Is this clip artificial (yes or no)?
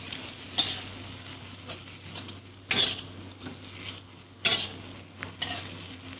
no